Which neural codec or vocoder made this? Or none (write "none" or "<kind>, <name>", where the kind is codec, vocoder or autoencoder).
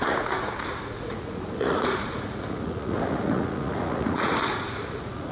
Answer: vocoder, Vocos